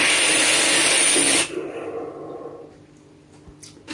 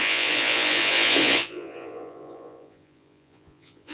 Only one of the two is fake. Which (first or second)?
second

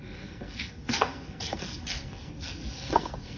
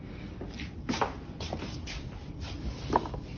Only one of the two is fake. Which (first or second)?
first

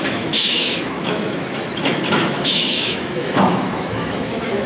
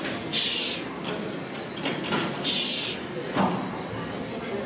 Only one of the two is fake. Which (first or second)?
first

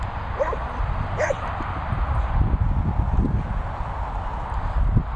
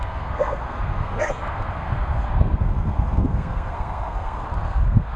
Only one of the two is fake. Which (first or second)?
second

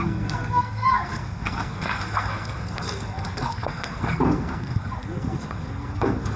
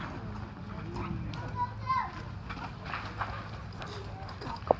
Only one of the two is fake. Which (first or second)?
first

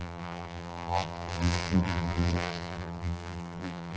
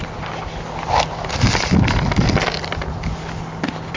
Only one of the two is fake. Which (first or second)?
first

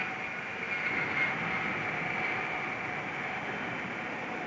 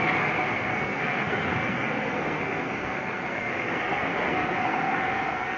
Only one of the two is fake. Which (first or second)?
second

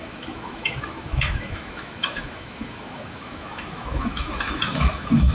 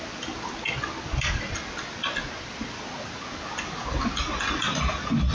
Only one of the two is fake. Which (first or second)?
first